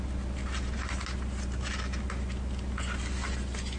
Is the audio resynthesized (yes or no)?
no